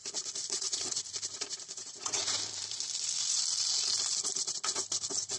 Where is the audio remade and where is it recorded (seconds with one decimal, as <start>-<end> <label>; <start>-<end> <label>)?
0.0-0.5 recorded; 0.5-1.0 remade; 1.0-1.7 recorded; 1.7-2.2 remade; 2.2-5.4 recorded